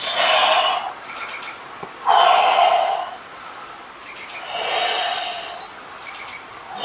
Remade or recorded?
recorded